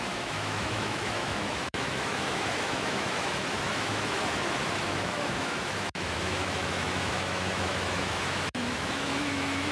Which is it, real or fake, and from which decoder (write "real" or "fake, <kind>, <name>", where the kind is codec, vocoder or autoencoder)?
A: fake, autoencoder, DAC-VAE